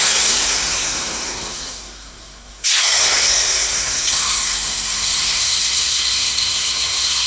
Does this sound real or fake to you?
fake